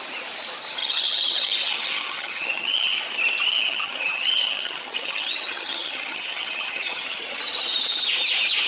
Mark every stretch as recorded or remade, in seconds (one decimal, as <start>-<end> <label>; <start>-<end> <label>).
0.0-0.8 recorded; 0.8-3.0 remade; 3.0-3.5 recorded; 3.5-7.4 remade; 7.4-8.7 recorded